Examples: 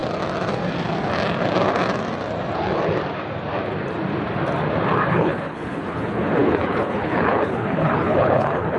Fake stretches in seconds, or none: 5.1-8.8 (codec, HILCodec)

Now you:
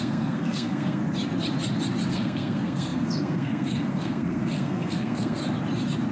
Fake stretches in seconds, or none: 0.0-1.0 (codec, SNAC); 2.1-5.4

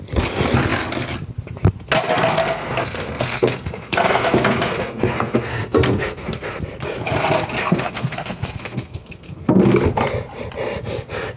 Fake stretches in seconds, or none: 2.3-6.6 (codec, SNAC); 7.6-9.6

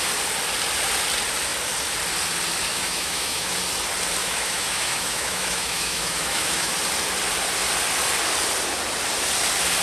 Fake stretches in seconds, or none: 2.7-3.5 (autoencoder, DAC-VAE); 4.2-6.7

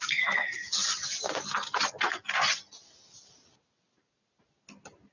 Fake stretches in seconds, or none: none